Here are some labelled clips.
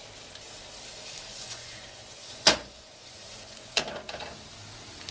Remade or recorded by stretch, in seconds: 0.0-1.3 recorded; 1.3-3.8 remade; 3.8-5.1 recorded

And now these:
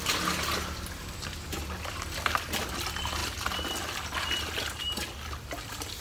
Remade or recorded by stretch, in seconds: 0.0-6.0 recorded

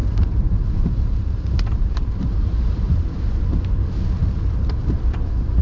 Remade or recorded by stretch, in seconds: 0.0-3.4 remade; 3.4-4.2 recorded; 4.2-5.6 remade

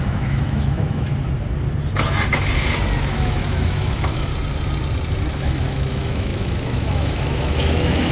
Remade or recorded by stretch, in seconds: 0.0-1.1 remade; 1.1-3.0 recorded; 3.0-4.3 remade; 4.3-5.3 recorded; 5.3-8.1 remade

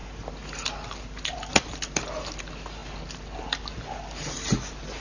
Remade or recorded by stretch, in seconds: 0.0-5.0 recorded